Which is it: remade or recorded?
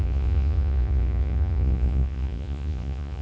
remade